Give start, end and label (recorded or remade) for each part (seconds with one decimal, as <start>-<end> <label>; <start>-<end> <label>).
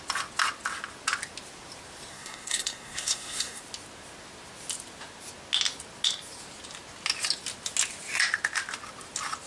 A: 0.0-2.1 recorded; 2.1-3.6 remade; 3.6-9.5 recorded